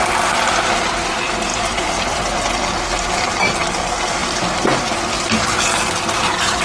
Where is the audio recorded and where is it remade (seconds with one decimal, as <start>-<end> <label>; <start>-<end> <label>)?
0.0-0.6 remade; 0.6-1.5 recorded; 1.5-3.3 remade; 3.3-4.2 recorded; 4.2-4.7 remade; 4.7-6.6 recorded